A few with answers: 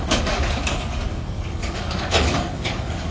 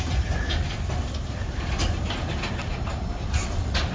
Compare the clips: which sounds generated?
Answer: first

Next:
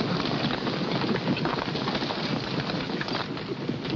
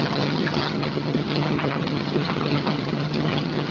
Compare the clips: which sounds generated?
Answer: second